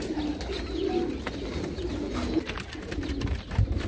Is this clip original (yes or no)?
yes